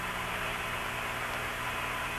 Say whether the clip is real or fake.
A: real